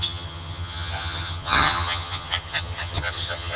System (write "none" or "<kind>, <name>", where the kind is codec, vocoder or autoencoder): vocoder, HiFi-GAN